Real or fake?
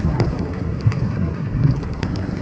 fake